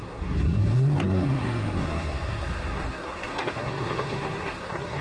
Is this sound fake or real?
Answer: fake